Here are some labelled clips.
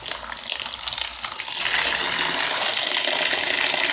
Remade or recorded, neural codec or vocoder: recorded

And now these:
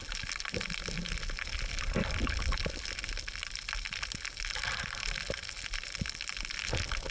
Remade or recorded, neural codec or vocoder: recorded